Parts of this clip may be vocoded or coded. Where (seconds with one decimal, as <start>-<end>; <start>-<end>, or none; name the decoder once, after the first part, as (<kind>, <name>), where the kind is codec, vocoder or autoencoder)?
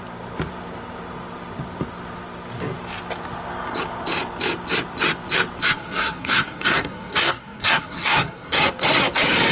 5.6-8.6 (codec, SNAC)